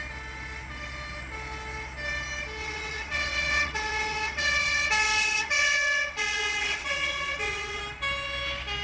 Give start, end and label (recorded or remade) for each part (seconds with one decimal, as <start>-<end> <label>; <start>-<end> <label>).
0.0-2.6 recorded; 2.6-7.8 remade; 7.8-8.8 recorded